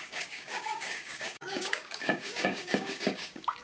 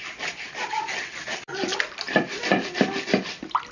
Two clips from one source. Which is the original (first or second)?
second